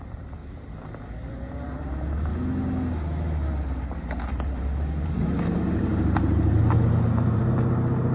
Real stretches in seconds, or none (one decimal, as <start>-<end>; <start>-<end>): 0.4-1.3; 2.3-4.3